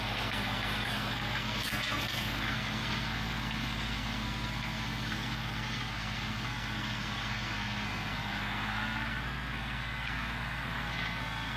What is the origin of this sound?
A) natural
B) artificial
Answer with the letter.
B